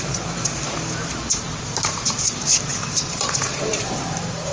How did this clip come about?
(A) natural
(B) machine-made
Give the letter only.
B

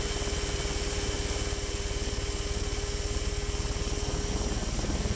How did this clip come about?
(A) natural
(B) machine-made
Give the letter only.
A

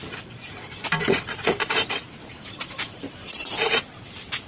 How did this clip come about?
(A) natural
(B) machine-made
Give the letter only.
B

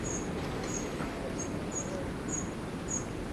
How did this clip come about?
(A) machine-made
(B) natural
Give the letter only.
B